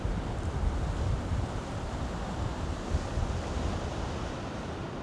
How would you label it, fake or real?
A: real